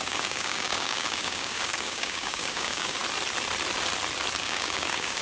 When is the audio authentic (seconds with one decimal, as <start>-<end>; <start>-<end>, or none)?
3.0-4.4